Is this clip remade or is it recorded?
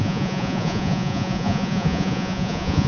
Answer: remade